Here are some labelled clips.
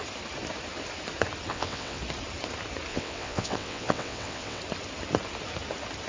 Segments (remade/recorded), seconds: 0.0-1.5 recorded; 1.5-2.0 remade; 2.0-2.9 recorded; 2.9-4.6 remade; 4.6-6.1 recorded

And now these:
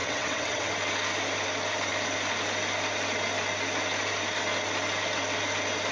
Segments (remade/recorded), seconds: 0.0-0.7 remade; 0.7-5.9 recorded